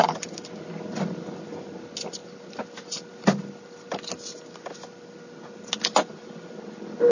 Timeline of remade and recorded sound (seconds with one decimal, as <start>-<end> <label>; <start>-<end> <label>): 0.0-7.1 recorded

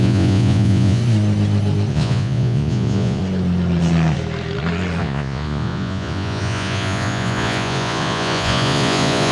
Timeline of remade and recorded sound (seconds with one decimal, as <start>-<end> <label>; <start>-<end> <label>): 0.0-1.0 remade; 1.0-1.9 recorded; 1.9-3.2 remade; 3.2-5.0 recorded; 5.0-9.3 remade

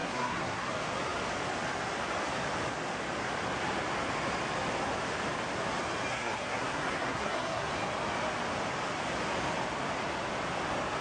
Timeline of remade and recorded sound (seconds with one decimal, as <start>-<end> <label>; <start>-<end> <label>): 0.0-0.7 remade; 0.7-6.1 recorded; 6.1-7.7 remade; 7.7-11.0 recorded

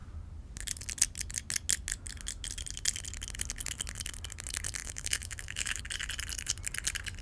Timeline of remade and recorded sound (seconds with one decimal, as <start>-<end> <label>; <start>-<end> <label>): 0.0-4.8 recorded; 4.8-5.8 remade; 5.8-7.2 recorded